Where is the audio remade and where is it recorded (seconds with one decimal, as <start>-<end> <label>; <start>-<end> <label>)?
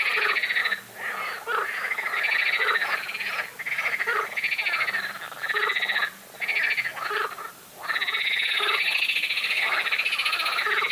0.0-10.9 recorded